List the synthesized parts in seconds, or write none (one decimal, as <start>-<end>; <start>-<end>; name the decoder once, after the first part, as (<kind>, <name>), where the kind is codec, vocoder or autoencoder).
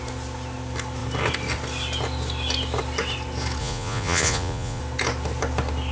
3.6-4.8 (vocoder, Vocos)